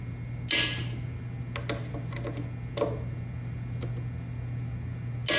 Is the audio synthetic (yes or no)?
no